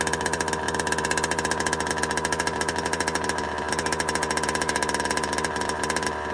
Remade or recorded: recorded